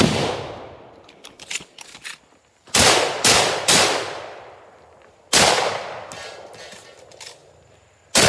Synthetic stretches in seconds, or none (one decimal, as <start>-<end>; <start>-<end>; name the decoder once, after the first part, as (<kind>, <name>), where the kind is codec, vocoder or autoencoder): none